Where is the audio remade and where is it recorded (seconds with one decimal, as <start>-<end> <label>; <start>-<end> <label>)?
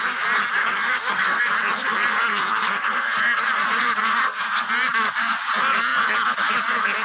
0.0-0.6 recorded; 0.6-1.4 remade; 1.4-2.3 recorded; 2.3-3.4 remade; 3.4-4.0 recorded; 4.0-4.7 remade; 4.7-7.0 recorded